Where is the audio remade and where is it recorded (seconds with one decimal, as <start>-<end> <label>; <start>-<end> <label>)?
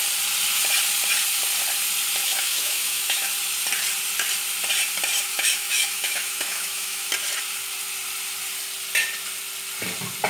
0.0-2.2 recorded; 2.2-3.3 remade; 3.3-5.3 recorded; 5.3-7.1 remade; 7.1-10.3 recorded